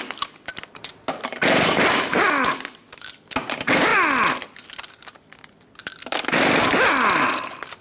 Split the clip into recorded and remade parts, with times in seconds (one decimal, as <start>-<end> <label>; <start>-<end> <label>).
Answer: 0.0-7.8 recorded